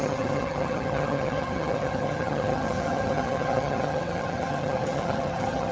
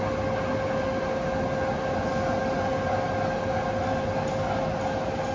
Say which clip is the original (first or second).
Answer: second